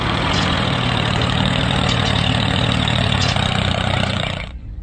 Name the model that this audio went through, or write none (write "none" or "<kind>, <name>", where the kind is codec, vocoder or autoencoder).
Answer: vocoder, Vocos